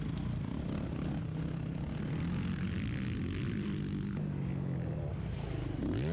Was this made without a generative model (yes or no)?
yes